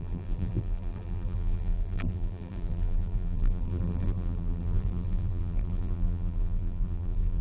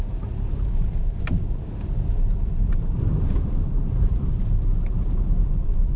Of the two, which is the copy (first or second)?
first